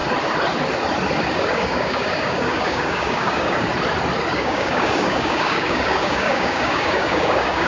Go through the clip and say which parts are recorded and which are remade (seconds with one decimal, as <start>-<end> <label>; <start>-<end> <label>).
0.0-1.3 recorded; 1.3-3.7 remade; 3.7-4.3 recorded; 4.3-7.7 remade